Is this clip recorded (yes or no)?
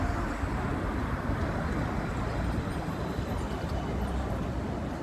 yes